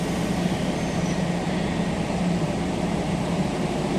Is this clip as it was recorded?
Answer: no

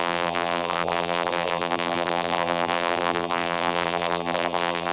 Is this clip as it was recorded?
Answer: no